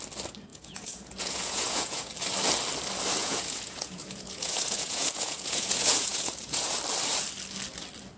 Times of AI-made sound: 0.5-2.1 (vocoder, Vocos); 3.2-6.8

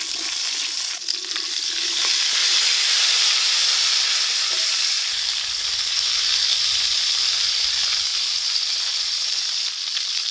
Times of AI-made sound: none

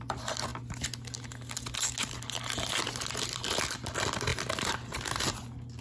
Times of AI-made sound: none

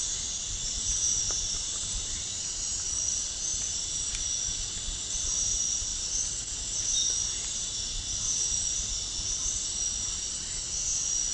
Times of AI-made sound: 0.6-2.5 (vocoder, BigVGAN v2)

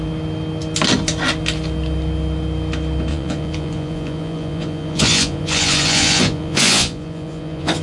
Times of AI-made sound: 3.1-7.8 (vocoder, Vocos)

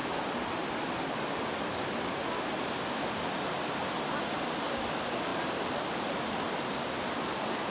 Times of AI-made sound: none